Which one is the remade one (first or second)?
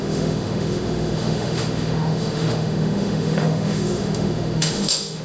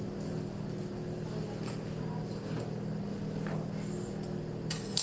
first